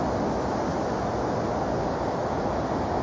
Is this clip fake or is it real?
real